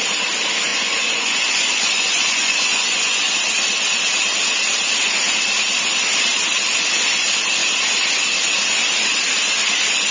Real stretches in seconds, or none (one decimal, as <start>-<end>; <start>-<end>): 0.0-0.7; 3.3-10.1